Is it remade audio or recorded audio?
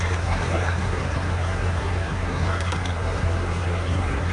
remade